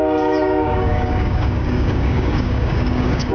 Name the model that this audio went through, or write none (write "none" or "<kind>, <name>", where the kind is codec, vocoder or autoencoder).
codec, DAC